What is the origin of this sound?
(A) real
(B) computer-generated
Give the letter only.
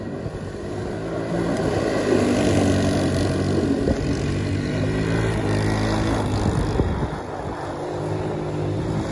A